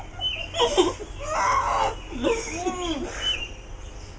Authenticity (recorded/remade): recorded